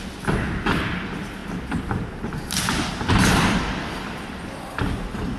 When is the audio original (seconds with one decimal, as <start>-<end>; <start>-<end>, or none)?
0.0-5.4